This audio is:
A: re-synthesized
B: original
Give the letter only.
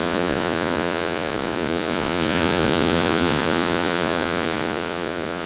A